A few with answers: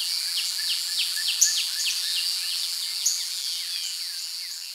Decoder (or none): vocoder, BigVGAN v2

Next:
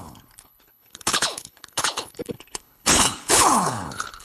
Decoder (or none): codec, HILCodec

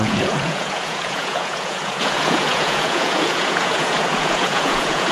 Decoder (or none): vocoder, Vocos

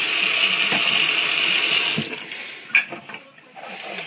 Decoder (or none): none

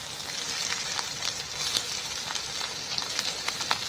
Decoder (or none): none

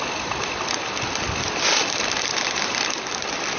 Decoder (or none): none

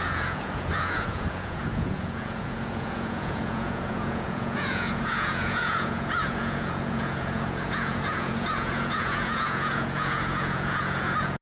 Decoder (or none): vocoder, Vocos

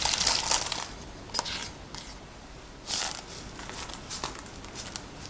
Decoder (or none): none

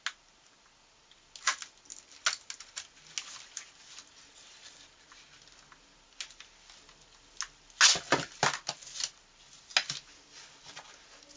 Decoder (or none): none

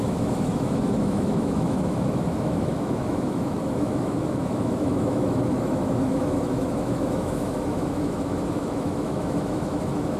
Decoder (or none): autoencoder, DAC-VAE